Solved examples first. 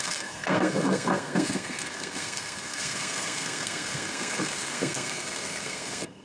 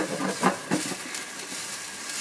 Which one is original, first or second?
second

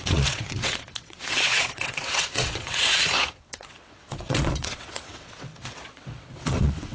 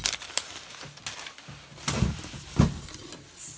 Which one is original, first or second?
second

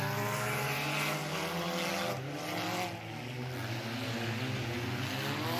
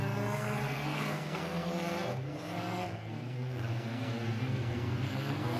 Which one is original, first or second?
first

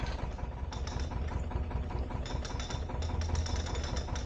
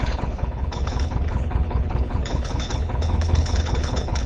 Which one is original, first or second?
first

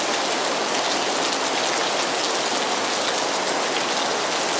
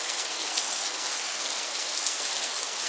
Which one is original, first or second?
first